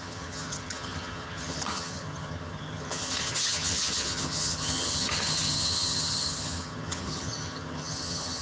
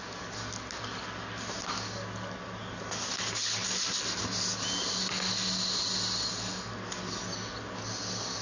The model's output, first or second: first